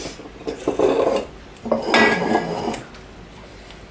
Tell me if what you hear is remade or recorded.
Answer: recorded